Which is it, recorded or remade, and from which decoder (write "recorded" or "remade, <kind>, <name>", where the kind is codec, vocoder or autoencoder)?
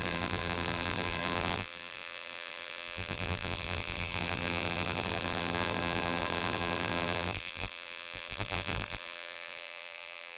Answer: remade, vocoder, BigVGAN v2